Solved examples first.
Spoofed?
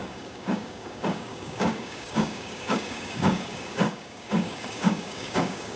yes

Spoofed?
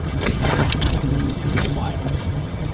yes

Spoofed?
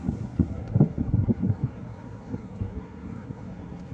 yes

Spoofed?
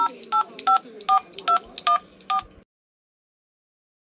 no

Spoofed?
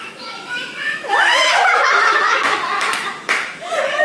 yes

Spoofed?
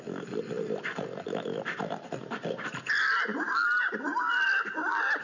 no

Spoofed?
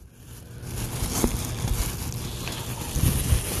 no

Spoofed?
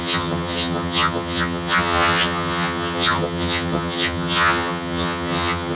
yes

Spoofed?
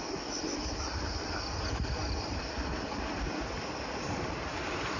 no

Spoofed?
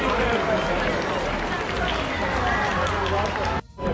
no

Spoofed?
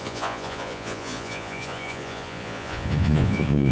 yes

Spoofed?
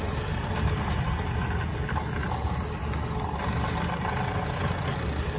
no